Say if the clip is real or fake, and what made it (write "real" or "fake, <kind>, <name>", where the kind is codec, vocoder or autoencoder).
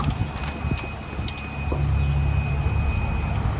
real